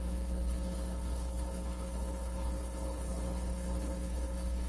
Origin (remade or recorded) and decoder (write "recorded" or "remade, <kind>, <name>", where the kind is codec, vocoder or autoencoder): remade, codec, HILCodec